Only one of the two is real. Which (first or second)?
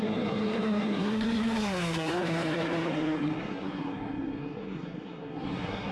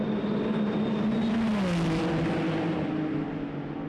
second